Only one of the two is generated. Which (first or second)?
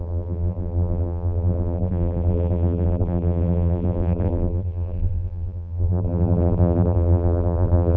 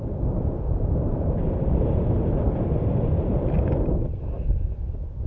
first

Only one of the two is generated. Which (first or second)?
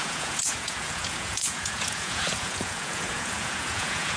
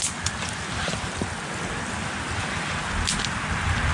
first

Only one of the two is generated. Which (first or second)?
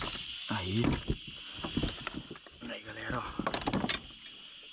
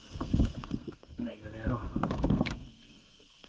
second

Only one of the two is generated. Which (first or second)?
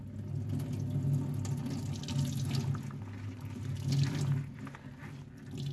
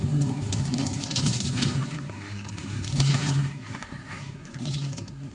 second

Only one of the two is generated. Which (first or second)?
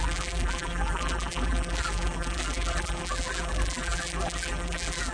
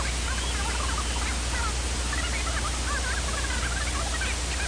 first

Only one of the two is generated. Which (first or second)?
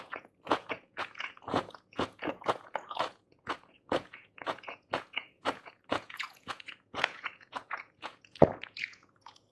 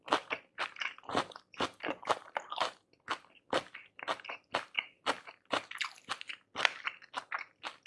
first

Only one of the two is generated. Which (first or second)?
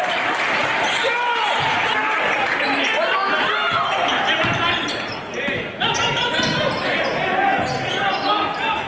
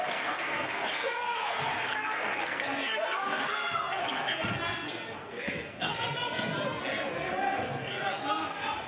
second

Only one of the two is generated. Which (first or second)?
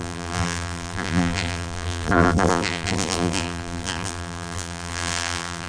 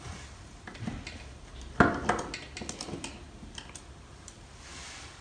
first